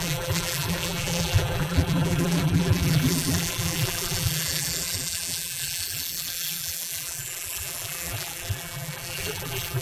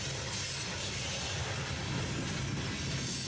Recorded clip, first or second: second